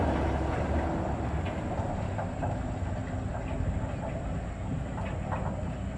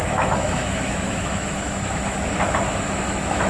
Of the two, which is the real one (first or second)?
first